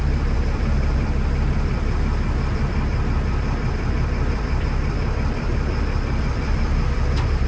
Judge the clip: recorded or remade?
remade